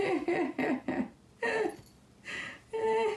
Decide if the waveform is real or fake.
real